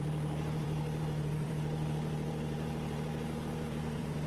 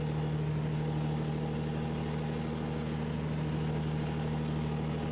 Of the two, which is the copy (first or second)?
first